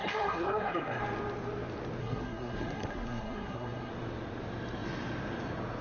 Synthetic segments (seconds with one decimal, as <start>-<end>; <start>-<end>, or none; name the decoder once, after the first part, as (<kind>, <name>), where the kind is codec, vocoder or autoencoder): 0.0-1.0 (codec, SNAC); 2.0-3.9